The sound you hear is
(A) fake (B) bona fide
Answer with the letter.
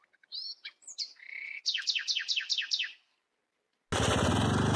B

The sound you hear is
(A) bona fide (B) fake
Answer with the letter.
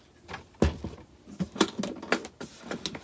A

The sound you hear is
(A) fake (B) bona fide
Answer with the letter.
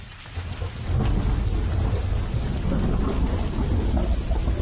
B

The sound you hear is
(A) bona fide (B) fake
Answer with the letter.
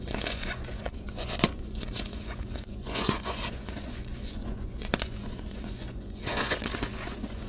B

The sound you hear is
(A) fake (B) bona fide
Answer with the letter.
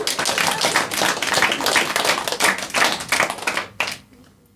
B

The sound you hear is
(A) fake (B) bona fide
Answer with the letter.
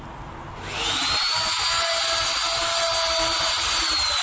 B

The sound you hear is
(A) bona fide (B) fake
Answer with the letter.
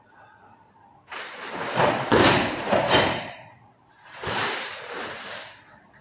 B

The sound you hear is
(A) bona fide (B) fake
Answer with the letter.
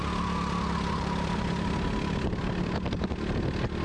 A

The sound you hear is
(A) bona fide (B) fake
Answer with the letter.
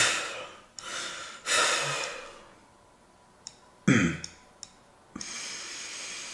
A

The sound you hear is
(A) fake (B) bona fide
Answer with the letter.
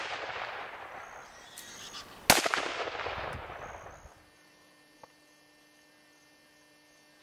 B